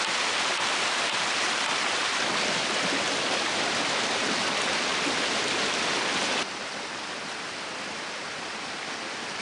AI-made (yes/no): no